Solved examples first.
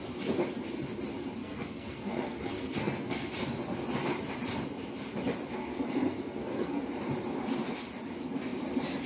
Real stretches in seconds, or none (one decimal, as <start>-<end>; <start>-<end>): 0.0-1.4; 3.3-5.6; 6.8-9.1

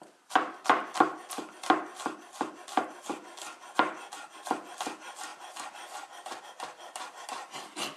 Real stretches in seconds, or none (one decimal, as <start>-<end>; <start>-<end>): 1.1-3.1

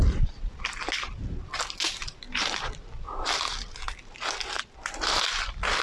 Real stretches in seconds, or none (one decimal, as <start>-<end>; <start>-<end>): 0.0-5.8

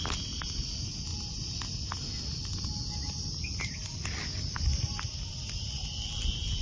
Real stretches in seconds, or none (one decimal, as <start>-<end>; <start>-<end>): 0.0-6.6

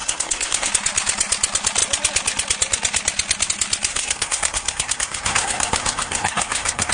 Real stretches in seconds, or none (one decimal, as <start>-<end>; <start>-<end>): 0.7-3.9

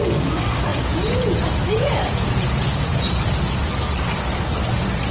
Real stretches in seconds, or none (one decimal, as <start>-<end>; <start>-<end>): 0.0-0.7; 3.3-5.1

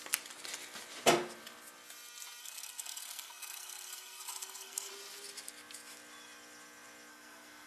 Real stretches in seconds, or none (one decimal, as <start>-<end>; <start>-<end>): 0.0-2.4; 4.9-7.1